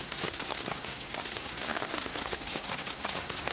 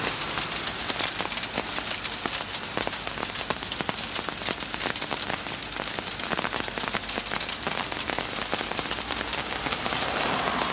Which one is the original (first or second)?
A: second